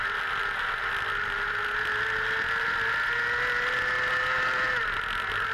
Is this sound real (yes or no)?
yes